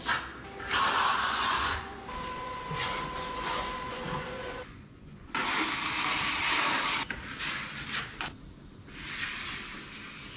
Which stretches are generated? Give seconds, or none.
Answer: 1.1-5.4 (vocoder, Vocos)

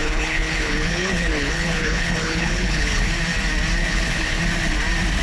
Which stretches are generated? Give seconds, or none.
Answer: 0.0-3.1 (codec, HILCodec); 3.8-4.4

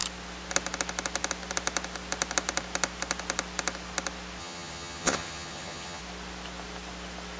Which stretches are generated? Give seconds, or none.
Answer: 4.4-6.0 (vocoder, HiFi-GAN)

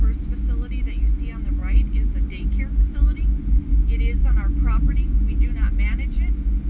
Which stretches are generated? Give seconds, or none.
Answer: none

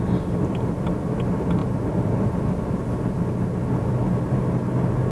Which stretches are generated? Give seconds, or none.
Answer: none